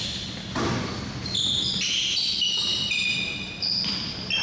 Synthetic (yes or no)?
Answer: no